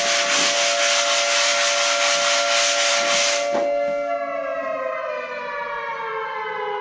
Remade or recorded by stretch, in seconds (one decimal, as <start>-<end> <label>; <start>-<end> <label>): 0.0-6.8 recorded